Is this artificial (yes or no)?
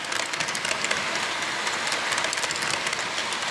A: no